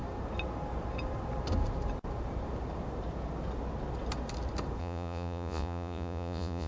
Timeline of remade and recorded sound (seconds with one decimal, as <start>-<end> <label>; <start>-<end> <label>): 0.0-4.8 recorded; 4.8-6.7 remade